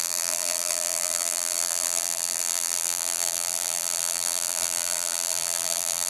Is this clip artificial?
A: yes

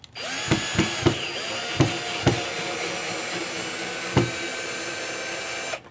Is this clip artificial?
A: no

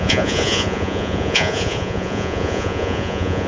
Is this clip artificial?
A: yes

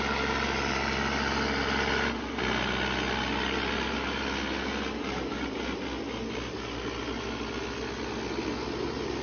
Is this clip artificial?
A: no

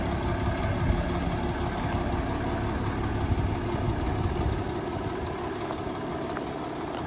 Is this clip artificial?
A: no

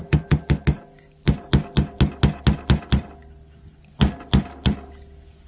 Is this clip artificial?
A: no